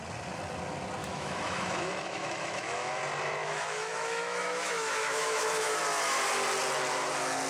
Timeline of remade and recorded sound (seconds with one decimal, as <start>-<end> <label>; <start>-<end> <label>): 0.0-1.0 recorded; 1.0-3.0 remade; 3.0-3.4 recorded; 3.4-5.8 remade; 5.8-7.5 recorded